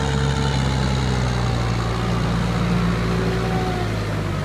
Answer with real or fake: real